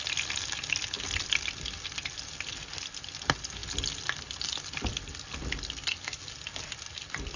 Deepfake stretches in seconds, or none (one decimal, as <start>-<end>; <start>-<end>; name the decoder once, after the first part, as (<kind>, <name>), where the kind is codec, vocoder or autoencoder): none